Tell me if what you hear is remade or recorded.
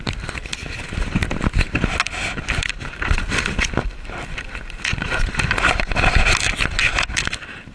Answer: recorded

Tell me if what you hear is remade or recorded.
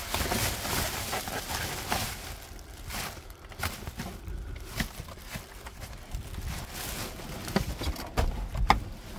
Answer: recorded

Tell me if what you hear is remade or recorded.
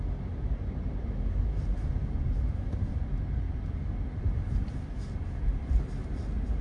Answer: recorded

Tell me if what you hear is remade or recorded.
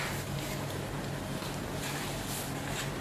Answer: recorded